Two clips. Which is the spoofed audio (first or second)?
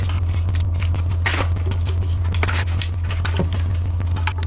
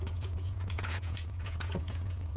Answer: second